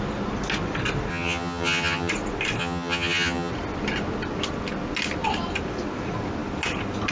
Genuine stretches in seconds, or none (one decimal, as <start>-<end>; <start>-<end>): 0.0-1.1; 2.1-2.6; 3.5-7.1